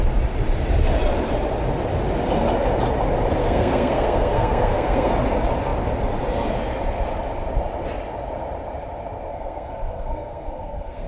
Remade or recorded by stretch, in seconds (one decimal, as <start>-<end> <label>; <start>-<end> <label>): 0.0-3.4 recorded; 3.4-5.1 remade; 5.1-9.3 recorded; 9.3-11.1 remade

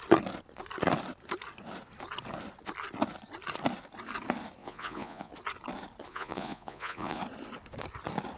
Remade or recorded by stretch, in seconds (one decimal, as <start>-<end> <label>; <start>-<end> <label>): 0.0-4.6 recorded; 4.6-5.3 remade; 5.3-6.1 recorded; 6.1-7.2 remade; 7.2-8.4 recorded

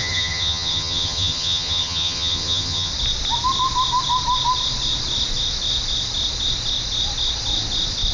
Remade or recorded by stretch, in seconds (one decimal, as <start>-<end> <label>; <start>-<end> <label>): 0.0-2.9 remade; 2.9-8.1 recorded

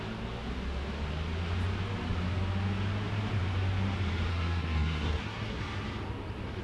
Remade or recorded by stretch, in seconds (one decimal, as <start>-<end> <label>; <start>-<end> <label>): 0.0-4.3 recorded; 4.3-5.6 remade; 5.6-6.6 recorded

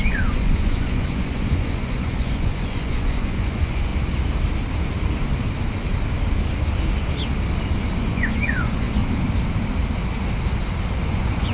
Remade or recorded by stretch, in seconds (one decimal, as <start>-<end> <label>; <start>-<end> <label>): 0.0-3.9 remade; 3.9-8.0 recorded; 8.0-9.0 remade; 9.0-11.1 recorded; 11.1-11.5 remade

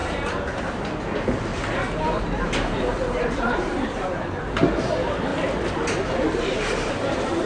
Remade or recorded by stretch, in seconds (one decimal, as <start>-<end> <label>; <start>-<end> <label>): 0.0-0.6 remade; 0.6-1.5 recorded; 1.5-4.4 remade; 4.4-5.3 recorded; 5.3-6.9 remade; 6.9-7.5 recorded

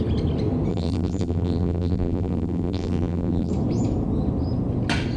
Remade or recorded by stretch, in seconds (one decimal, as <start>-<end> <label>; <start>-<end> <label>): 0.0-0.7 recorded; 0.7-3.5 remade; 3.5-5.2 recorded